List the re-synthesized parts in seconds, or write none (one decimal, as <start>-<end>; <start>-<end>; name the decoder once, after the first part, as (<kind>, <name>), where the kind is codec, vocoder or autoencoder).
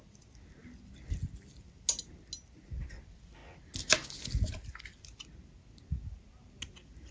none